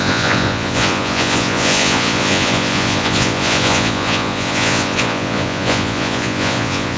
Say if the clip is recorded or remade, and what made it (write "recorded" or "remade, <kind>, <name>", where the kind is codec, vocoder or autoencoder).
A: remade, vocoder, Vocos